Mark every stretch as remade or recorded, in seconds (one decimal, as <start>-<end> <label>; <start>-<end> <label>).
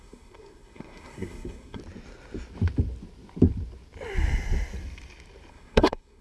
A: 0.0-1.8 remade; 1.8-5.5 recorded; 5.5-6.2 remade